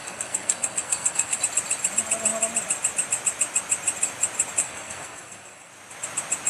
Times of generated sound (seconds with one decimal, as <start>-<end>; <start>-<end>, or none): 0.0-1.4; 4.6-5.7

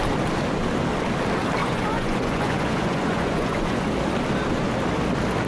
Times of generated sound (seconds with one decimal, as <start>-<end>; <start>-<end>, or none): 1.6-3.9

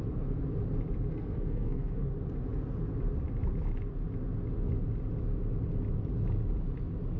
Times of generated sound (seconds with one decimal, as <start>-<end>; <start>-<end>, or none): 1.1-2.1

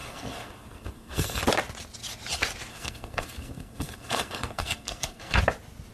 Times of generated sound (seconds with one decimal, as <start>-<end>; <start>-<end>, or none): 0.0-1.4; 2.7-5.4